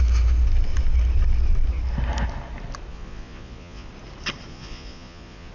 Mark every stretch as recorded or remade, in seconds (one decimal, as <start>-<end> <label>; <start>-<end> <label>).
0.0-2.9 recorded; 2.9-3.9 remade; 3.9-4.5 recorded; 4.5-5.5 remade